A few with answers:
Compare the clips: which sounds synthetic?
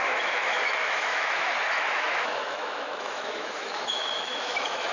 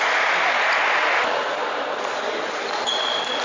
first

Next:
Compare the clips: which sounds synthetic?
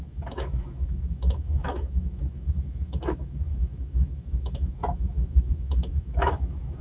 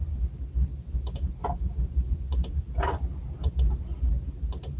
first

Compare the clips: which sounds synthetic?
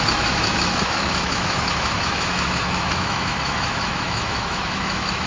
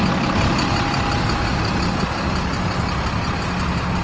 first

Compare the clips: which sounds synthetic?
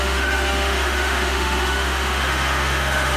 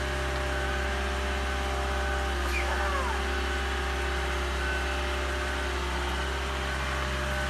first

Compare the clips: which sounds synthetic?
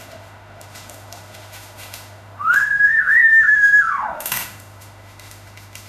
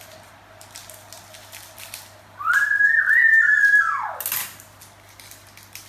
first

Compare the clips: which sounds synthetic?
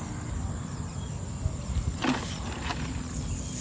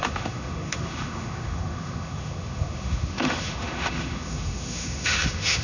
second